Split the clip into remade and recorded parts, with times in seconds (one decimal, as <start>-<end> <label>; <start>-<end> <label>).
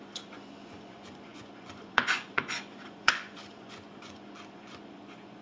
0.0-5.4 remade